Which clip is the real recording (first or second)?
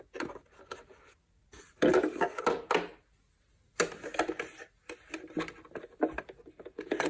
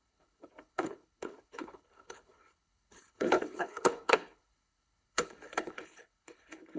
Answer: first